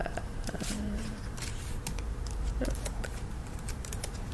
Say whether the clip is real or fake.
fake